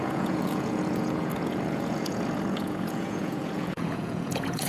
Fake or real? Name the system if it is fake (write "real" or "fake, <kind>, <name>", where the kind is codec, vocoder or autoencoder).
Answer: fake, vocoder, Vocos